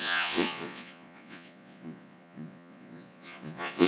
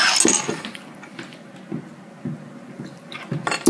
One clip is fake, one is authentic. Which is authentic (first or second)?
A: second